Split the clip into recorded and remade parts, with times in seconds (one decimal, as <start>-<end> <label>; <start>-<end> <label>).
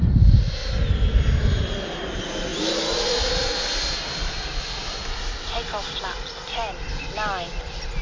0.0-8.0 recorded